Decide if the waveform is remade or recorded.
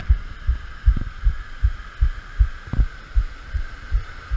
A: recorded